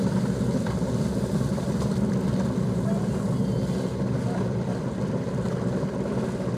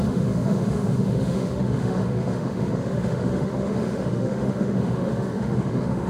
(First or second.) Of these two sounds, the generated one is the second